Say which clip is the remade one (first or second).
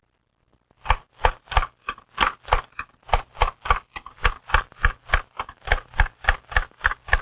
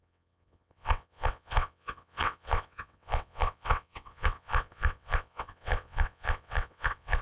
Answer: second